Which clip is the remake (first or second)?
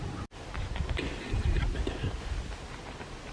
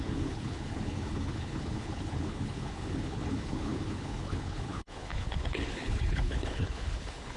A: second